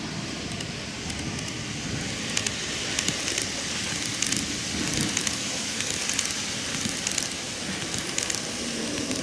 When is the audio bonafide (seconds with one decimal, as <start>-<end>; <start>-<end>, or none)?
0.0-5.2; 6.0-9.2

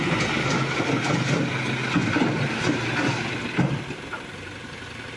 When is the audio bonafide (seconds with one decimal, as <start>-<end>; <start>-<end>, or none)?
0.0-5.2